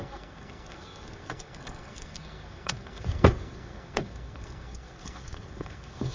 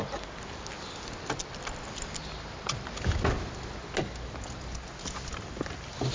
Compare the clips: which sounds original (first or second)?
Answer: second